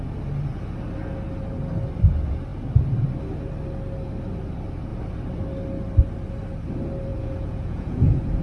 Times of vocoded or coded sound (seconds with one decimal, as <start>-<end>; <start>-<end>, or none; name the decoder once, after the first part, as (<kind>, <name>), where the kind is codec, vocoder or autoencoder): 7.1-8.4 (vocoder, Vocos)